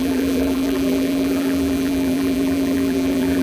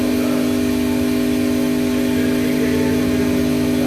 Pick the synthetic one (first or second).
first